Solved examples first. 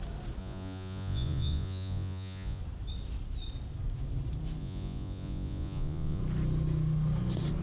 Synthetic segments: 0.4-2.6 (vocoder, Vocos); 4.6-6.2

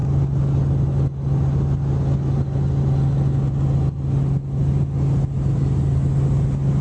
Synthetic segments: none

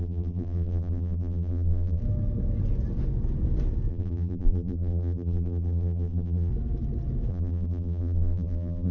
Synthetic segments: 0.0-2.0 (vocoder, BigVGAN v2); 3.9-6.5; 7.3-8.9